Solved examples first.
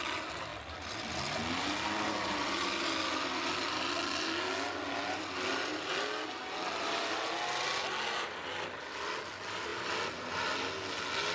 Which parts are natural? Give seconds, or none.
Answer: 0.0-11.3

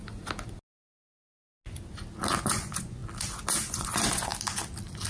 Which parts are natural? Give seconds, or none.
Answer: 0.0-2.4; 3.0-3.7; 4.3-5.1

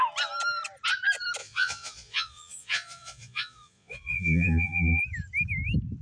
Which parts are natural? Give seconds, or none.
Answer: 0.0-1.4; 5.0-6.0

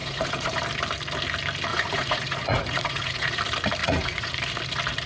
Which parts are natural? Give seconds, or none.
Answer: 0.6-1.7; 3.4-3.8; 4.4-5.1

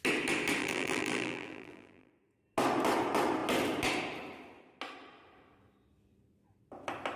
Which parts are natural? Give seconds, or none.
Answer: 0.0-0.6; 2.1-7.2

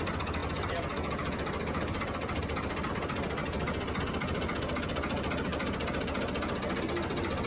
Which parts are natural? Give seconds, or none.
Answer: 0.0-7.5

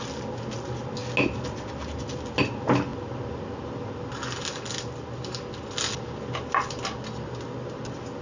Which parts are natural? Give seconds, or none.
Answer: 0.0-8.2

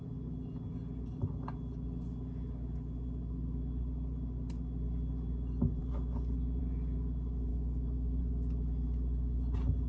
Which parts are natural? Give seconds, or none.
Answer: 0.0-7.5; 8.2-9.9